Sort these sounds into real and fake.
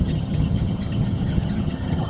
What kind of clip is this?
fake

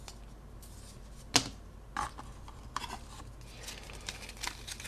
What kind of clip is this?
real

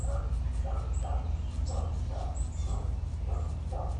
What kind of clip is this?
real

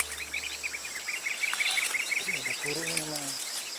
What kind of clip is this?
real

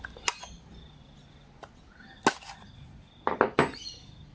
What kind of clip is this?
real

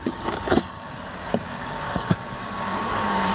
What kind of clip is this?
fake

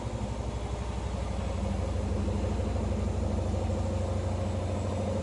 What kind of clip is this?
real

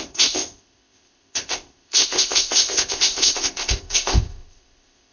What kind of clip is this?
fake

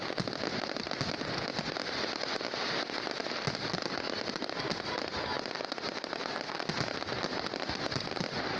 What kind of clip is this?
real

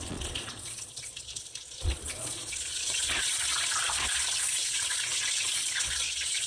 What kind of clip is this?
fake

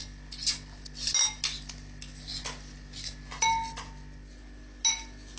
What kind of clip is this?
real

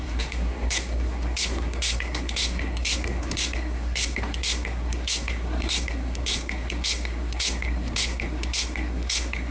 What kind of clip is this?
fake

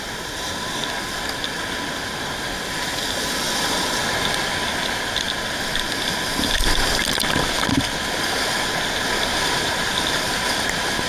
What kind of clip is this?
real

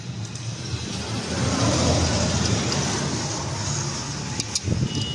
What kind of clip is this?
real